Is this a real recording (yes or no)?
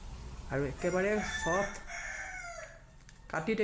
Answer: yes